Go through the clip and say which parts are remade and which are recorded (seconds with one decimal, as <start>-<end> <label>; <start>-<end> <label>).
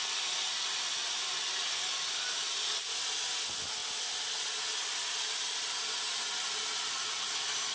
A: 0.0-7.7 recorded